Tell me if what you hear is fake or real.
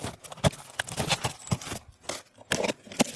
real